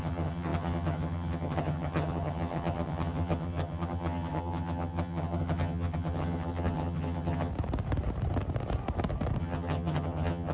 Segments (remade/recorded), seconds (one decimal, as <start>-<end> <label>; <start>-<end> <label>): 0.0-7.5 remade; 7.5-9.4 recorded; 9.4-10.5 remade